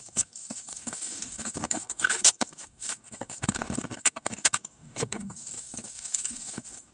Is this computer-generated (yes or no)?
yes